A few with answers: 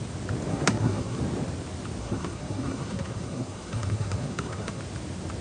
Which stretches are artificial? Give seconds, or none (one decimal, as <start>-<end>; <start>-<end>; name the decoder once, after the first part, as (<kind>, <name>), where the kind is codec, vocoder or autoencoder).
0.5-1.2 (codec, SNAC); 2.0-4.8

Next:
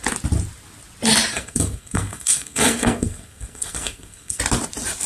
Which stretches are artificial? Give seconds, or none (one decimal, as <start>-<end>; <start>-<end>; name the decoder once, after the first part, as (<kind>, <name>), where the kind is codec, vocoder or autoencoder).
1.3-4.4 (codec, SNAC)

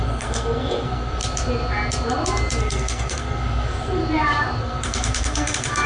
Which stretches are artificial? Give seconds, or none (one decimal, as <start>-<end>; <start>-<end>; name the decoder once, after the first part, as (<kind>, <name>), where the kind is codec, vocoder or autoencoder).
0.0-1.2 (codec, SNAC); 2.6-4.0; 4.6-5.9

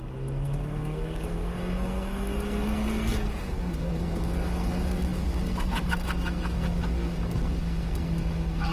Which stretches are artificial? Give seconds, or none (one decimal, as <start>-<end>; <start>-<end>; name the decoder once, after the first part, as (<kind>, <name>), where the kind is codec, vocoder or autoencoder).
0.0-8.7 (codec, SNAC)

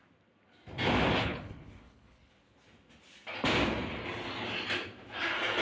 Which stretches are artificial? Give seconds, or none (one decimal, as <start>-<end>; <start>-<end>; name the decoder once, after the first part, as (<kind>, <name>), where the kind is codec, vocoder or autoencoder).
1.2-2.3 (codec, HILCodec)

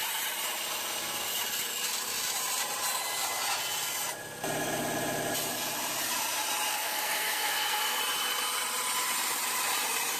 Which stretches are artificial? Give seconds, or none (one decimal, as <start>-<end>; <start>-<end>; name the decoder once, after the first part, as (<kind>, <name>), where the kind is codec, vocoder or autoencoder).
6.7-8.0 (codec, SNAC)